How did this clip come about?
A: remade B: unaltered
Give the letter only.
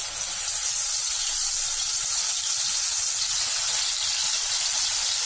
B